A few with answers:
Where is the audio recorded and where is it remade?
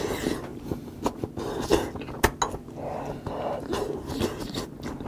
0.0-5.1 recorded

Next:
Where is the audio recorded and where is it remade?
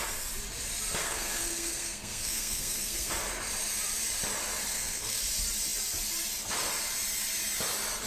0.0-1.0 recorded; 1.0-3.1 remade; 3.1-4.7 recorded; 4.7-5.2 remade; 5.2-8.1 recorded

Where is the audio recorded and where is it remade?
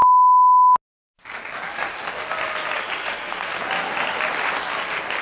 0.0-3.0 recorded; 3.0-3.6 remade; 3.6-5.2 recorded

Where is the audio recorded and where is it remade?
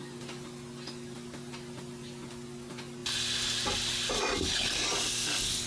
0.0-5.7 recorded